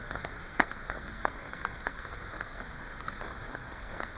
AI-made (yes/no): yes